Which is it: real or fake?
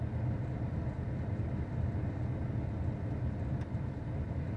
real